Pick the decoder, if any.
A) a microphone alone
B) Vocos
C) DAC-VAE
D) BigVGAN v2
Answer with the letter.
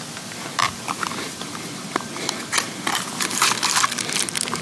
D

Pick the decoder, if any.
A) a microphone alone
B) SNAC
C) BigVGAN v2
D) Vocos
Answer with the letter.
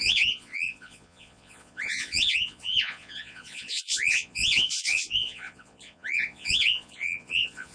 D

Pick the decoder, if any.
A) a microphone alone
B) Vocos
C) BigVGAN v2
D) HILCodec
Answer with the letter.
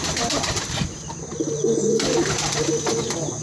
A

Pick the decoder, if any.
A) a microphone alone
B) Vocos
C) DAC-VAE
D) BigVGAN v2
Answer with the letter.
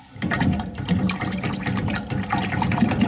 D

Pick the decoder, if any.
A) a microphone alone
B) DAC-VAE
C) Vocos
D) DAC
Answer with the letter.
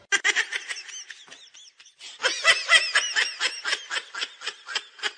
A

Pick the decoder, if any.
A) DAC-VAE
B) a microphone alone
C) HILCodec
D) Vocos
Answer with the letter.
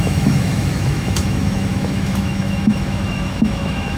A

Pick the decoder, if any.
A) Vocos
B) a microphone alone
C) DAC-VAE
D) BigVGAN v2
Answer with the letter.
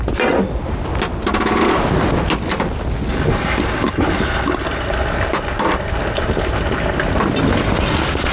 B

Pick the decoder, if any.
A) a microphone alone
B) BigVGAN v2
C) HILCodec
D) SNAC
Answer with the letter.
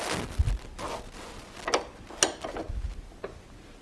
A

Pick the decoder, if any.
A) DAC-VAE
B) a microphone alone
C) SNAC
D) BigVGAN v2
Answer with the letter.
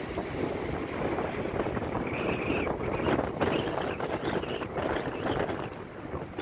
B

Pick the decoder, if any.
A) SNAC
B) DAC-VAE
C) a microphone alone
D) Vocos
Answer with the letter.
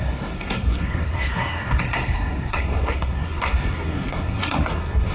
A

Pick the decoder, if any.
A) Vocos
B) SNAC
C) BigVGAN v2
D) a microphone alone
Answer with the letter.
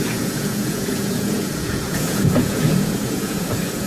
A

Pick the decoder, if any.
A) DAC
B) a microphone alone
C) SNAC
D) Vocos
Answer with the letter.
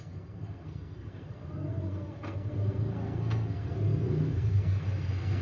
C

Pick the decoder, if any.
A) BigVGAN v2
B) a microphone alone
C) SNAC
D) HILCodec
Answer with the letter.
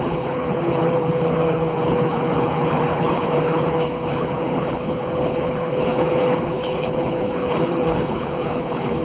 D